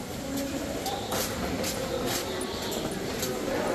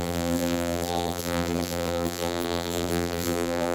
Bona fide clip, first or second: first